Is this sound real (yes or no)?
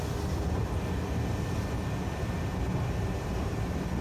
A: yes